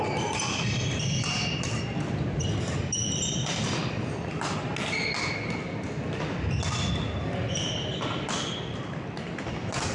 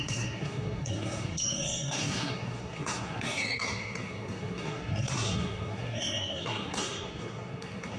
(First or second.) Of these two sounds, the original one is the first